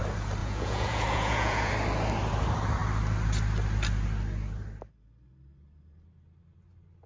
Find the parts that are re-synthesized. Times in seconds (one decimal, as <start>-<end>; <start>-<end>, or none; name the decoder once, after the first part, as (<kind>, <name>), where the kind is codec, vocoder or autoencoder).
0.4-1.7 (vocoder, Vocos)